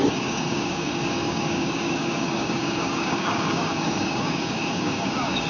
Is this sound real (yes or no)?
no